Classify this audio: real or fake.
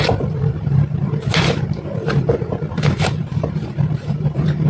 fake